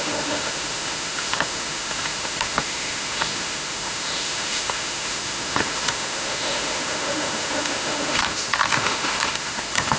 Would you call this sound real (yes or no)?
no